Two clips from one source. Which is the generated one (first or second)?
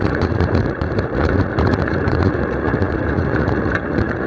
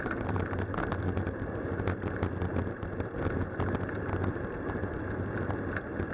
first